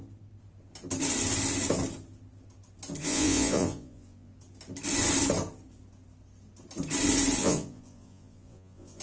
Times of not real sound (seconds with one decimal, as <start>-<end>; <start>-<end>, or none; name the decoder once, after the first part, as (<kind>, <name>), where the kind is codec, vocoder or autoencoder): 3.0-4.3 (vocoder, Vocos); 7.4-9.0